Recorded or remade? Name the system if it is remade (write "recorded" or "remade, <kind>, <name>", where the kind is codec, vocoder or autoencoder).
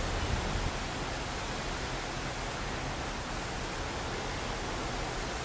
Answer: recorded